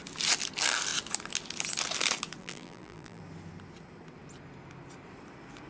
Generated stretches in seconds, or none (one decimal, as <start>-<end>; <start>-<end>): 2.4-3.2

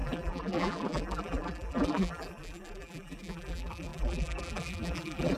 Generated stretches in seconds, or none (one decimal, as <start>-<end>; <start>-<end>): 0.0-5.4

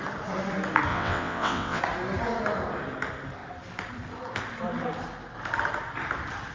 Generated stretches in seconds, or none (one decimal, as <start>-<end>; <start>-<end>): 0.9-1.8

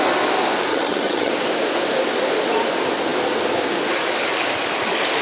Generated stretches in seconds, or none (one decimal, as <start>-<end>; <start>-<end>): 0.7-1.3

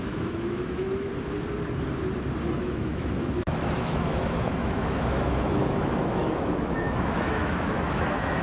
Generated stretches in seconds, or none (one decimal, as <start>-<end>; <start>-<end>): 0.0-1.1; 2.6-8.4

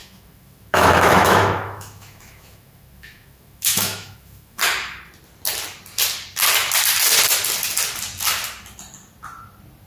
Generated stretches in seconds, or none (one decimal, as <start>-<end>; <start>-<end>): 0.0-4.6

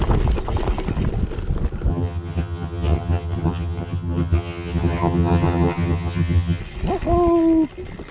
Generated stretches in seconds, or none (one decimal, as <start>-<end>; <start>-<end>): 1.9-6.6

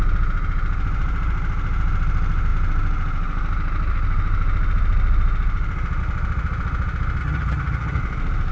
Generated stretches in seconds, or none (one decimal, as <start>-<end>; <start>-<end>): 7.2-8.0